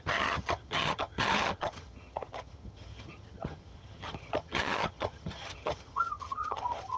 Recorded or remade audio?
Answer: remade